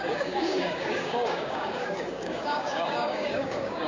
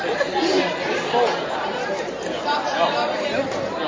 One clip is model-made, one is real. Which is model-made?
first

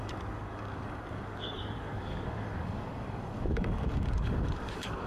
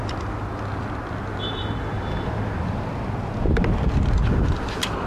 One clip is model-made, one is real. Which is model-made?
first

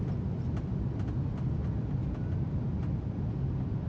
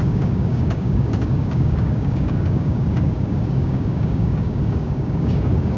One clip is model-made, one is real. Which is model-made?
second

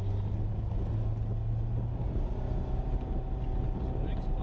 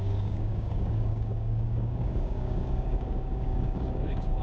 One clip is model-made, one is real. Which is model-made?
second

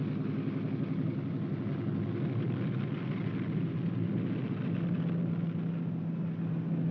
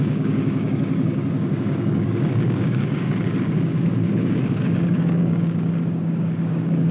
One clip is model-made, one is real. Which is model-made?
second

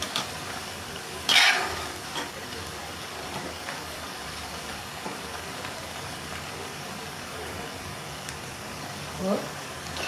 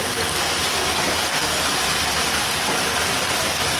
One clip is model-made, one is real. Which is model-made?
first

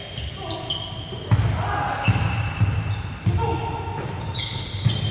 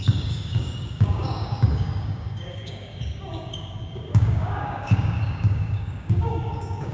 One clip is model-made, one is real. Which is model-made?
second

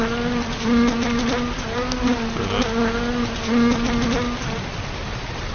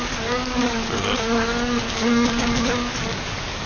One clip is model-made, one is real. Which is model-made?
second